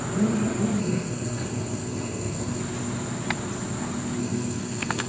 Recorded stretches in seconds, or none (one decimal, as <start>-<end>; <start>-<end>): 0.0-0.8; 2.6-4.2